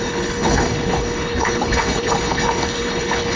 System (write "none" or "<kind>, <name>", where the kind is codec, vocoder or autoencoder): codec, HILCodec